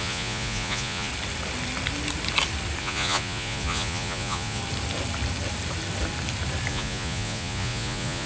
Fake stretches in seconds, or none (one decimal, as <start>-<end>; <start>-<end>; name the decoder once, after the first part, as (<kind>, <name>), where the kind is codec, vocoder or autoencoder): 0.0-1.1 (vocoder, Vocos); 2.8-4.6; 6.7-8.3

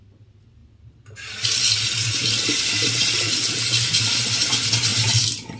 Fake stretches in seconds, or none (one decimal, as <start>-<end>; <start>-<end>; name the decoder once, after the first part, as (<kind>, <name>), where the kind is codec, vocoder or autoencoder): none

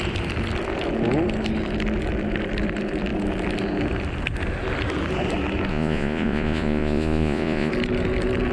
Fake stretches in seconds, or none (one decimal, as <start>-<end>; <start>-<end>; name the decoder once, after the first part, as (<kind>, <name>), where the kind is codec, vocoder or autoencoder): 5.7-7.7 (vocoder, Vocos)

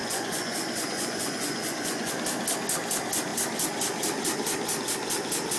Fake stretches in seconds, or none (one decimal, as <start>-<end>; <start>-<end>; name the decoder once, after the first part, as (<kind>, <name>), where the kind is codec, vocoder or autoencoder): 0.0-2.1 (vocoder, Vocos)

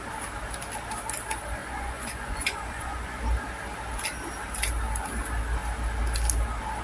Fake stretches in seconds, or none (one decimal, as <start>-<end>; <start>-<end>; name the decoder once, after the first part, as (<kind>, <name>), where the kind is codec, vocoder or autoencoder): 1.6-3.2 (vocoder, Vocos)

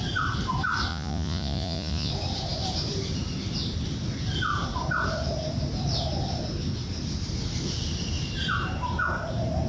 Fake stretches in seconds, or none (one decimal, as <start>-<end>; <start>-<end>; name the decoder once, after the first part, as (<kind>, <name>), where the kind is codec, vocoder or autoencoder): 0.9-2.1 (vocoder, Vocos)

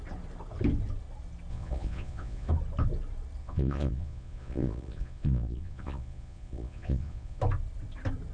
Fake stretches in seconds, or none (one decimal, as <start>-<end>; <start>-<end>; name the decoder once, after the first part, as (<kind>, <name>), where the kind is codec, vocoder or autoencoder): 1.5-2.5 (vocoder, Vocos); 3.4-7.4